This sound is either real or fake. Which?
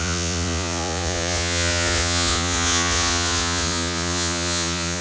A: fake